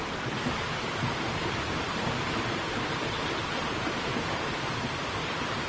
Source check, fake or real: real